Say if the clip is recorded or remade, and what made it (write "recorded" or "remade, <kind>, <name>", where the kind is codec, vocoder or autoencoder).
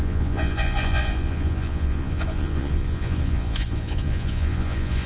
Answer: remade, vocoder, Vocos